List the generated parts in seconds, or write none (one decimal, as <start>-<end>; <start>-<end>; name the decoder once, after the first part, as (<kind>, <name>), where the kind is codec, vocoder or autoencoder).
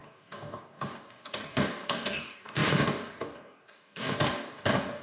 0.0-5.0 (codec, DAC)